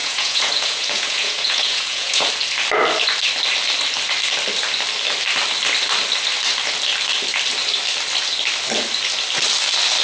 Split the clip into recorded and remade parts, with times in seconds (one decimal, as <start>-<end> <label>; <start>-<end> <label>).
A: 0.0-2.3 remade; 2.3-10.0 recorded

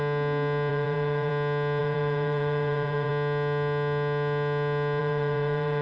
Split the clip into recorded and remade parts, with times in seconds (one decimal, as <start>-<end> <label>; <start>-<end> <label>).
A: 0.0-0.7 recorded; 0.7-1.3 remade; 1.3-1.8 recorded; 1.8-3.1 remade; 3.1-5.0 recorded; 5.0-5.8 remade

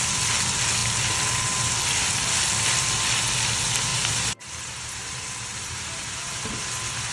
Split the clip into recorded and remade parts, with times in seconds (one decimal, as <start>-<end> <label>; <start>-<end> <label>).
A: 0.0-3.9 recorded; 3.9-6.3 remade; 6.3-7.1 recorded

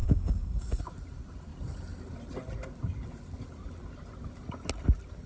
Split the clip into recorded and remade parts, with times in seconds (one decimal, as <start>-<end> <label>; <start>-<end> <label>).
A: 0.0-0.8 remade; 0.8-5.3 recorded

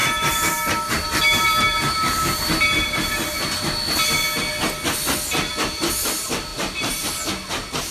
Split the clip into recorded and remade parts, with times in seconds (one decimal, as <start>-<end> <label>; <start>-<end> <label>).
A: 0.0-3.4 remade; 3.4-6.5 recorded; 6.5-7.1 remade; 7.1-7.9 recorded